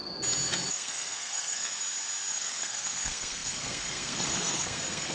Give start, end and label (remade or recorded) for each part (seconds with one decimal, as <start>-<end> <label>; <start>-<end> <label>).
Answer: 0.0-0.7 recorded; 0.7-1.7 remade; 1.7-2.3 recorded; 2.3-5.1 remade